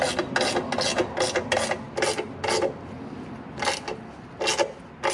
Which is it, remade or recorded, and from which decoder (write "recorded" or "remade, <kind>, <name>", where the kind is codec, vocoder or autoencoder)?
recorded